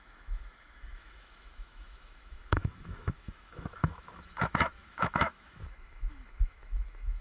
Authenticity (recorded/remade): remade